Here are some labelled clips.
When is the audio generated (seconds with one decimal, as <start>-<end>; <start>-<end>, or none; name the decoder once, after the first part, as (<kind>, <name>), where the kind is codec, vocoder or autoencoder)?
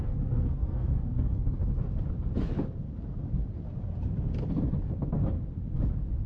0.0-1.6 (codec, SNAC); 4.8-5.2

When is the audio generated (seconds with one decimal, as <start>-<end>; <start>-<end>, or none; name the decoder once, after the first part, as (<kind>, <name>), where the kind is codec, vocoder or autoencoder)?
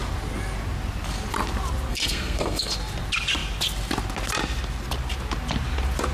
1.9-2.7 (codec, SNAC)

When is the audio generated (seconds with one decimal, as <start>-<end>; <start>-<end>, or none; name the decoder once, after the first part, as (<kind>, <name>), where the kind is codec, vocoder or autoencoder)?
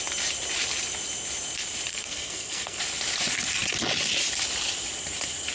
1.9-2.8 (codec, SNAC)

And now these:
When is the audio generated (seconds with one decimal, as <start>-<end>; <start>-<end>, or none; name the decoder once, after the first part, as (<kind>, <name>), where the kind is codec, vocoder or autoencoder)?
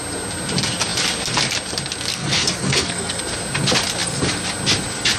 2.1-3.2 (codec, SNAC)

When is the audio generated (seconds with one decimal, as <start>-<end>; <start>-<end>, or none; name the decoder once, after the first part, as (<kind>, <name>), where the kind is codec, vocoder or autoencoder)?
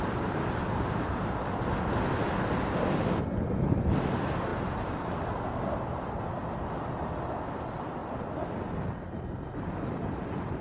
none